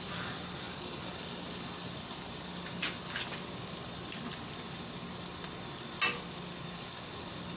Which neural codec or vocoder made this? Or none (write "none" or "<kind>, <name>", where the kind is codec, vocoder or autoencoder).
none